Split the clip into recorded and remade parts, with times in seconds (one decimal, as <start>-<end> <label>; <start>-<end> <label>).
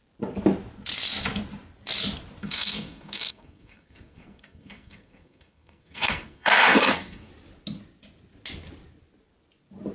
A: 0.0-2.4 recorded; 2.4-7.3 remade; 7.3-9.9 recorded